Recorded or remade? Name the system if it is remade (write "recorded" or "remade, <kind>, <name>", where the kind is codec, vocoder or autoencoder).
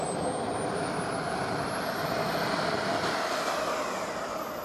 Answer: recorded